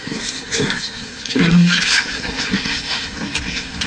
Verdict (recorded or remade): remade